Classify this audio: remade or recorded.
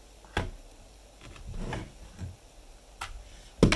recorded